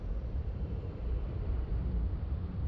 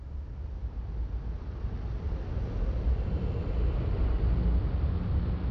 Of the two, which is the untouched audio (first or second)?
second